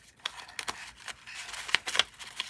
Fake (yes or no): no